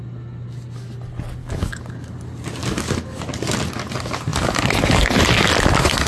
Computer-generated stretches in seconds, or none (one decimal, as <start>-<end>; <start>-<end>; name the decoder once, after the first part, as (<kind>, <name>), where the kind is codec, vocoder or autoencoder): 1.4-2.1 (codec, DAC); 2.6-3.2